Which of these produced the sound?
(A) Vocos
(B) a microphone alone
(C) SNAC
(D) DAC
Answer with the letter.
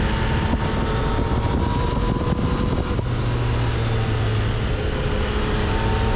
B